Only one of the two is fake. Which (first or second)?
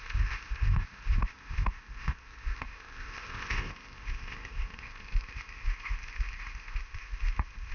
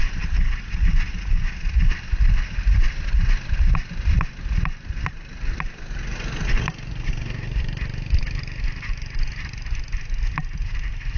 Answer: first